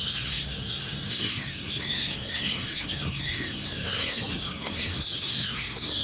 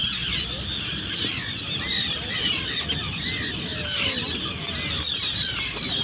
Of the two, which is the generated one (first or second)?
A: first